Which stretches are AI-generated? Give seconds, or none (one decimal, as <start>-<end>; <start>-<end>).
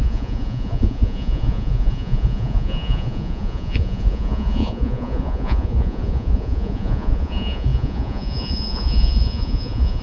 0.0-10.0